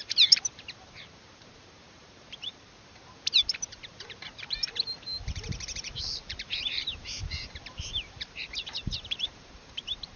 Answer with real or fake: fake